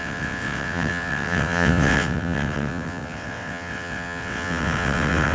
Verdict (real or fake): fake